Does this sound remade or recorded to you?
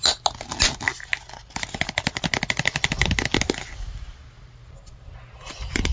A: recorded